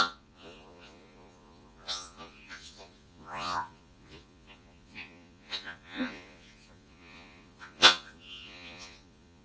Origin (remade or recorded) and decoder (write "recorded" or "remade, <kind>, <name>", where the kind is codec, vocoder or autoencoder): remade, vocoder, Vocos